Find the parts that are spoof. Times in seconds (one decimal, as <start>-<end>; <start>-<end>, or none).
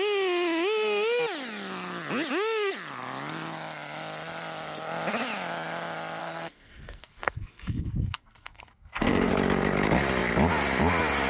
6.2-9.3